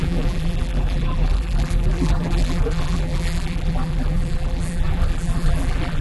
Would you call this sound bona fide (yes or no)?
no